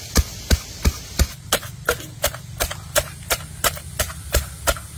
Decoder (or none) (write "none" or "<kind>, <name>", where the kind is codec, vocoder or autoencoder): none